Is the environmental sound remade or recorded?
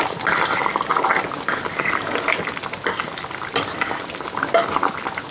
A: recorded